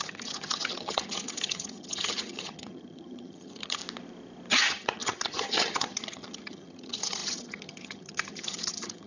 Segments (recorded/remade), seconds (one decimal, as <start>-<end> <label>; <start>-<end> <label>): 0.0-3.8 remade; 3.8-4.5 recorded; 4.5-9.1 remade